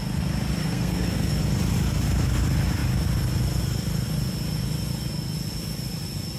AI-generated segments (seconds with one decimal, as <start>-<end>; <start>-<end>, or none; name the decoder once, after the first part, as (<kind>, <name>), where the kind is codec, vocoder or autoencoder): 0.6-1.4 (codec, SNAC)